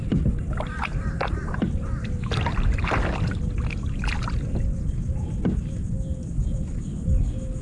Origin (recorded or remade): recorded